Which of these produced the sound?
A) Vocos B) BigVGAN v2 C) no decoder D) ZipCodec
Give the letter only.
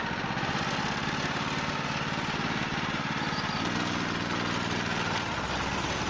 C